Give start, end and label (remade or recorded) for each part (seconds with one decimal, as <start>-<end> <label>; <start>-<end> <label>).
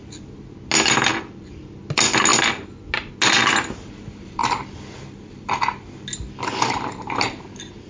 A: 0.0-1.1 recorded; 1.1-1.8 remade; 1.8-7.9 recorded